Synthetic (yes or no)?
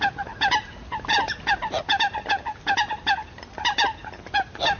no